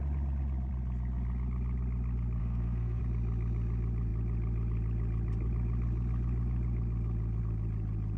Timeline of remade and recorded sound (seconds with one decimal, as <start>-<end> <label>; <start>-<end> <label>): 0.0-2.4 recorded; 2.4-3.0 remade; 3.0-8.2 recorded